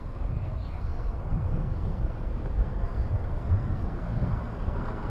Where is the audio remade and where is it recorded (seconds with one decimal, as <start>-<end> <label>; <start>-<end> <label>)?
0.0-5.1 remade